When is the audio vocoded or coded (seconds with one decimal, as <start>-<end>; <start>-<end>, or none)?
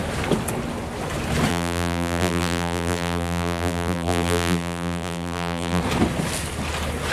1.5-5.8